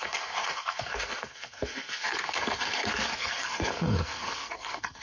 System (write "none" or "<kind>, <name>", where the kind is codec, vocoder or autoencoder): codec, SNAC